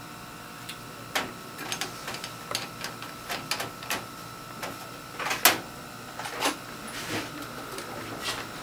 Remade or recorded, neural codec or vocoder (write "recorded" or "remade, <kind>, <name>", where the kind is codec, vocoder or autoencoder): recorded